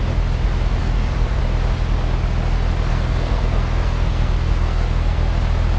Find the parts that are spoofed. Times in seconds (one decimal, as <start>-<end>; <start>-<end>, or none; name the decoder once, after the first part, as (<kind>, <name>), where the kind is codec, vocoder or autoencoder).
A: 0.8-1.4 (codec, SNAC); 2.9-5.3